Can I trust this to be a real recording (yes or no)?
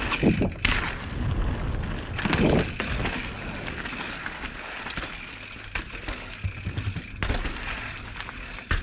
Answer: yes